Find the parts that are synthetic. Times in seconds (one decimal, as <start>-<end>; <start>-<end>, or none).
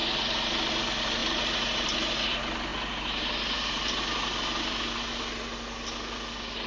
none